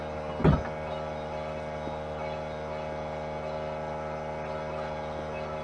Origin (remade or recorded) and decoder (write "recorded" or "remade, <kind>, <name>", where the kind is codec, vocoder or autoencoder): recorded